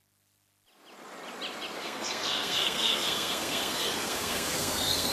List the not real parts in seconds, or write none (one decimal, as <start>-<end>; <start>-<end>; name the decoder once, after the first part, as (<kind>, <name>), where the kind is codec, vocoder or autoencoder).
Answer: 1.8-5.1 (codec, SNAC)